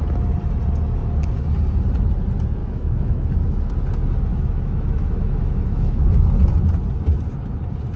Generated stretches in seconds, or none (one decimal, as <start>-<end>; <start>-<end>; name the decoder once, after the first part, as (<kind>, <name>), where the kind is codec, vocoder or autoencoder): 2.6-3.7 (autoencoder, DAC-VAE); 4.3-6.3